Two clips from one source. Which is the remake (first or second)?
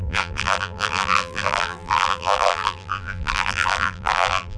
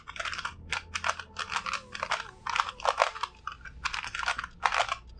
first